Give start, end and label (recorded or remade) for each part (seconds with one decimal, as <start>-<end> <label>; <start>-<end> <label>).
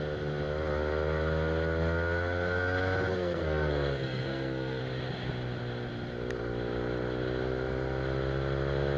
0.0-3.1 recorded; 3.1-4.8 remade; 4.8-9.0 recorded